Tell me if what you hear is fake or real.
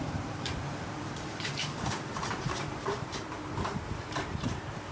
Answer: fake